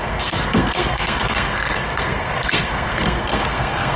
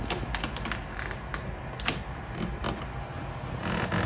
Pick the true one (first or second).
second